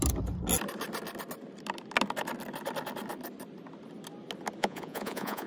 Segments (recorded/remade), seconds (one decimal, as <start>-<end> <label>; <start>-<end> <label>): 0.0-4.6 recorded; 4.6-5.5 remade